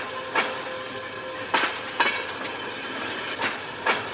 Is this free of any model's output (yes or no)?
yes